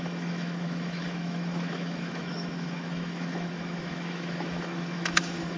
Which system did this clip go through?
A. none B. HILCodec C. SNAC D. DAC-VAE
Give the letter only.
D